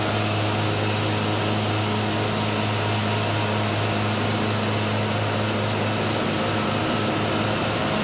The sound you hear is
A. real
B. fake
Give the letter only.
A